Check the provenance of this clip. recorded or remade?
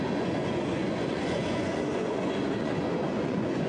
remade